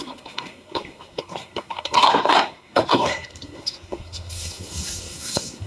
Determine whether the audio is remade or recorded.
remade